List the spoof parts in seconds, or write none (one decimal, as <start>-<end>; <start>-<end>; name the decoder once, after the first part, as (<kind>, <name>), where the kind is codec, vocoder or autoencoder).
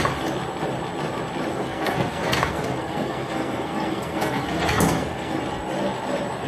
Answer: 1.5-5.4 (codec, SNAC)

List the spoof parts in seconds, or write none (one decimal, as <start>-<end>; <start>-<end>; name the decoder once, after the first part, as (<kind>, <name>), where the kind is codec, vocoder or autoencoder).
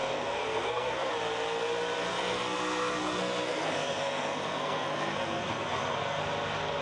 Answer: 0.0-1.1 (codec, SNAC); 2.1-6.2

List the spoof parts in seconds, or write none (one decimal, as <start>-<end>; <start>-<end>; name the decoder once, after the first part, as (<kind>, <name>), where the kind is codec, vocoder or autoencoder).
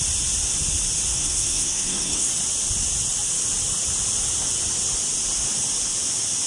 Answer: 1.1-2.3 (codec, SNAC)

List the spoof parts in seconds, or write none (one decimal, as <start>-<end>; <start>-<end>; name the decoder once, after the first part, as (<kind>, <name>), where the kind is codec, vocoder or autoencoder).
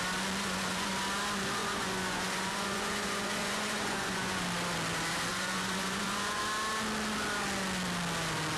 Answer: 0.4-0.9 (vocoder, Vocos); 1.6-4.4; 5.3-6.4